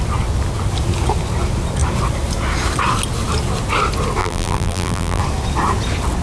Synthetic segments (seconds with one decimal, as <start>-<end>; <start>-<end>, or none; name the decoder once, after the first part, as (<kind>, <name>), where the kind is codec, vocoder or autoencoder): 4.2-5.2 (vocoder, BigVGAN v2)